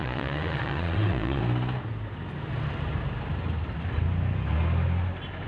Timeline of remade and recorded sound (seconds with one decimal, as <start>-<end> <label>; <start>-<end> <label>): 0.0-1.4 remade; 1.4-5.5 recorded